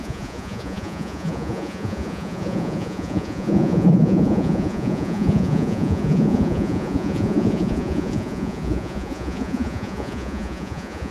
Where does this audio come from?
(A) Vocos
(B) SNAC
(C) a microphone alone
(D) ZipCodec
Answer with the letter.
A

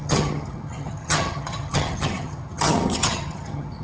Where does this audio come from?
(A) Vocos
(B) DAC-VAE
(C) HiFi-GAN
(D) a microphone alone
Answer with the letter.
C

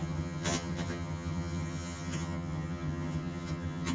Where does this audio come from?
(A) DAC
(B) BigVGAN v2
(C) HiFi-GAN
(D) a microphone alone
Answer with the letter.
C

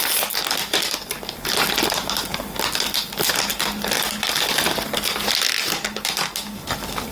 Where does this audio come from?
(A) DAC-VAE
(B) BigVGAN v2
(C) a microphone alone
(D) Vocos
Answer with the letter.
C